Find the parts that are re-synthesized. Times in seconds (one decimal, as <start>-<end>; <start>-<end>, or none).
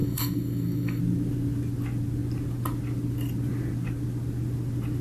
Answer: 0.0-1.0